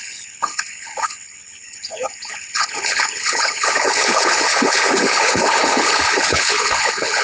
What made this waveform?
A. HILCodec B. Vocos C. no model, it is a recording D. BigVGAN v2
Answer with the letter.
A